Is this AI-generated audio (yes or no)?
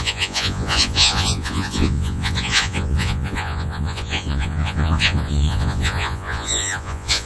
yes